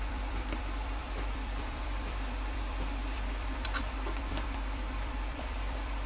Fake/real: fake